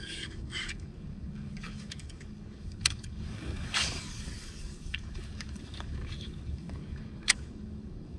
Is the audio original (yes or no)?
no